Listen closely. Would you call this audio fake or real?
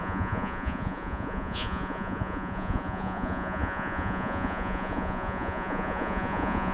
fake